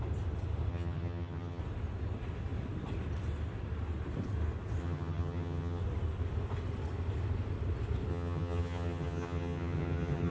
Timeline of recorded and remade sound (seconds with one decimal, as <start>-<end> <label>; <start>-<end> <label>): 0.0-0.7 recorded; 0.7-1.6 remade; 1.6-4.8 recorded; 4.8-5.8 remade; 5.8-8.1 recorded; 8.1-10.3 remade